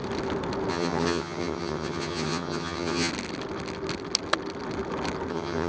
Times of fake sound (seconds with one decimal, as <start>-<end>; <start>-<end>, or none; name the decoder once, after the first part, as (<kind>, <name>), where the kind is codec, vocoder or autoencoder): 0.7-3.1 (vocoder, HiFi-GAN); 5.3-5.7